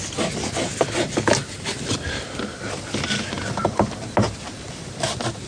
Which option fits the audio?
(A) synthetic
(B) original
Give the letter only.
B